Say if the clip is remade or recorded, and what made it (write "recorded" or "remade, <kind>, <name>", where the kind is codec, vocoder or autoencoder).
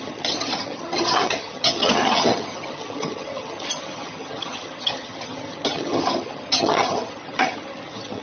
remade, vocoder, HiFi-GAN